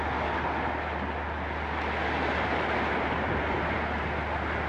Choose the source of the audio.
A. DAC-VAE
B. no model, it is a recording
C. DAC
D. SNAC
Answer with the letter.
B